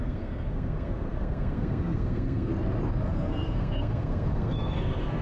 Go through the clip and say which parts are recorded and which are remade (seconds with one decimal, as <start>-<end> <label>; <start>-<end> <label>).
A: 0.0-2.5 remade; 2.5-3.1 recorded; 3.1-5.2 remade